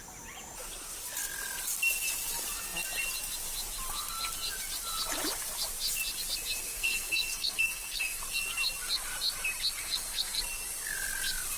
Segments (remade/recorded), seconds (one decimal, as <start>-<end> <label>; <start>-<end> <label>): 0.0-6.6 recorded; 6.6-8.2 remade; 8.2-9.8 recorded; 9.8-10.4 remade; 10.4-11.6 recorded